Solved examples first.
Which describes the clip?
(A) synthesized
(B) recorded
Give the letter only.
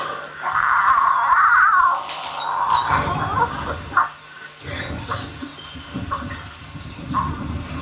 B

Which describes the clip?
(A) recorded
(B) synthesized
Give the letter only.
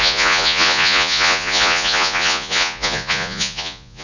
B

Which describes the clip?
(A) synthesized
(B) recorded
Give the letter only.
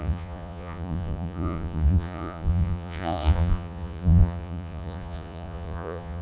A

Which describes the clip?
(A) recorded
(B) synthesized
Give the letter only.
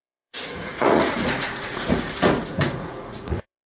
B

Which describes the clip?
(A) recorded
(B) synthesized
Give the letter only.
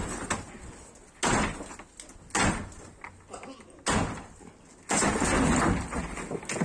A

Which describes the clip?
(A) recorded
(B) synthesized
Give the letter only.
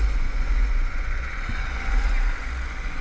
B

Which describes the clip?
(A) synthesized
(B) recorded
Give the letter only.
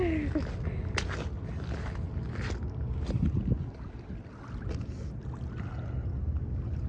B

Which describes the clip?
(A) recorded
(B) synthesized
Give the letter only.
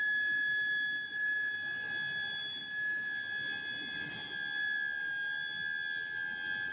A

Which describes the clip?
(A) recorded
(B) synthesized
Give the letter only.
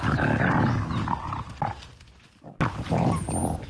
A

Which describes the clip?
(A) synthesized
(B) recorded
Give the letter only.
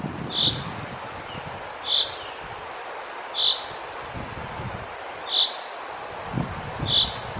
B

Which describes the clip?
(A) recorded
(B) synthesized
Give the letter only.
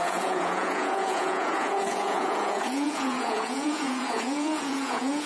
B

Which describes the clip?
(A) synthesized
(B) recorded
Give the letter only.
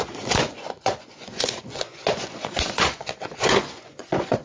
A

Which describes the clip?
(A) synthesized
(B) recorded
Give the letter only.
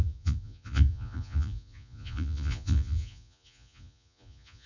A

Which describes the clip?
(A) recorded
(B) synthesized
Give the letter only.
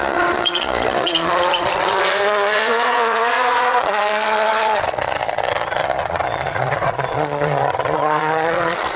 B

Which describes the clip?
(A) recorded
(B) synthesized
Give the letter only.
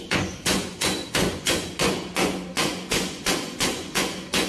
B